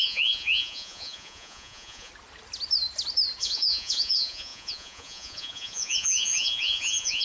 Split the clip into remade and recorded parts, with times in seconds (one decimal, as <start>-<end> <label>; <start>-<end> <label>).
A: 0.0-2.1 remade; 2.1-3.4 recorded; 3.4-7.2 remade